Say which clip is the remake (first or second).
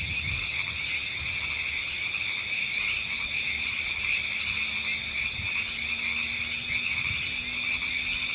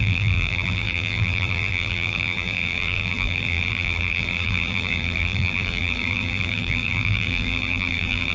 second